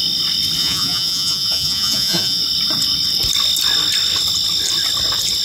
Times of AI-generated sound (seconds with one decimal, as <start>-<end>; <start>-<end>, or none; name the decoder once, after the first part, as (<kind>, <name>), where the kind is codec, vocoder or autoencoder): 0.6-2.4 (vocoder, Vocos)